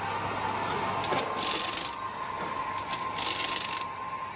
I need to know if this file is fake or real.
real